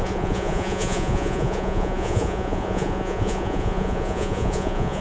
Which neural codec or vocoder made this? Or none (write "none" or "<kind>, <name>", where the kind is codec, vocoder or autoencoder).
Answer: vocoder, Vocos